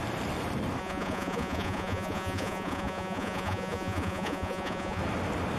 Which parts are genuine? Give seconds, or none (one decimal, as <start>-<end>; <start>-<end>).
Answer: 0.0-0.8; 5.0-5.6

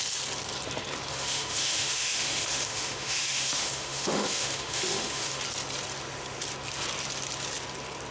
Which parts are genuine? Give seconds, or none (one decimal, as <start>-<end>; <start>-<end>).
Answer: 0.0-1.1; 5.4-8.1